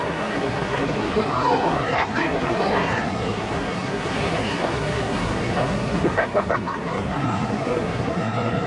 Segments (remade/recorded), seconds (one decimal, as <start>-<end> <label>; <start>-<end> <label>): 0.0-8.7 remade